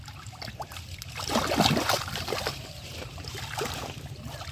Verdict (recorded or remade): remade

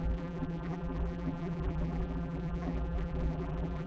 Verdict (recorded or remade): remade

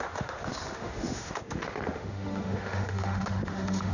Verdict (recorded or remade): remade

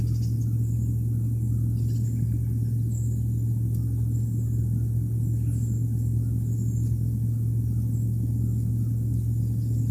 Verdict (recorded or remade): recorded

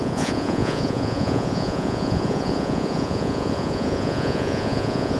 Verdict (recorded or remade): remade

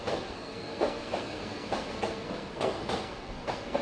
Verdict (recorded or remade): remade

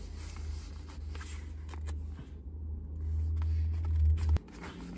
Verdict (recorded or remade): recorded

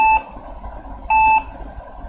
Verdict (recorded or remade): recorded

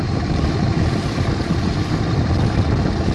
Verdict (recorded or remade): remade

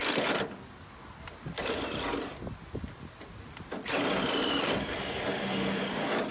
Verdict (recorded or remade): recorded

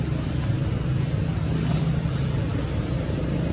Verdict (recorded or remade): recorded